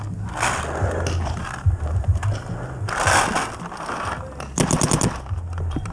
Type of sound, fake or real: real